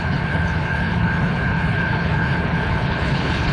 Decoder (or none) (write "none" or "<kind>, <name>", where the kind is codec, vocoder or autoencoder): codec, HILCodec